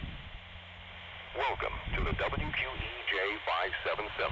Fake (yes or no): no